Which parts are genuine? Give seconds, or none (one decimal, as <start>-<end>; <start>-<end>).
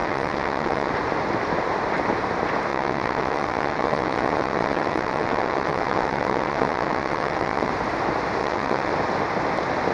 0.9-2.7; 7.7-8.4; 8.9-9.9